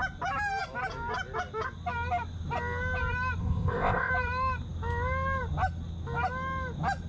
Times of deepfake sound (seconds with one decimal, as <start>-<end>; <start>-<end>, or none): 3.4-4.1